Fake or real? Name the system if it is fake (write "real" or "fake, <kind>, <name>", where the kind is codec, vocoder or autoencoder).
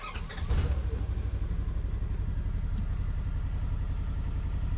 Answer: real